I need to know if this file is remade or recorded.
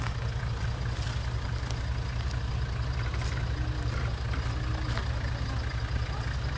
recorded